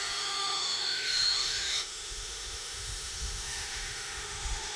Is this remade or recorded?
remade